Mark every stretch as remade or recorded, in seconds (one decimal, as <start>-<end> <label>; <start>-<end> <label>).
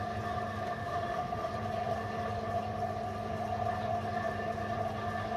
0.0-0.7 recorded; 0.7-1.5 remade; 1.5-5.4 recorded